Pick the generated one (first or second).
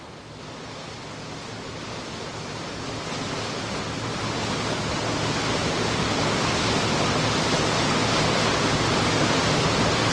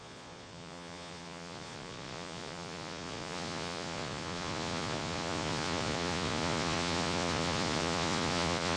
second